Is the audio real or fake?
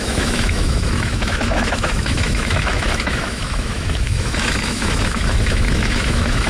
fake